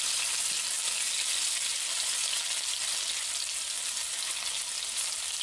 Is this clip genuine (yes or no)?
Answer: yes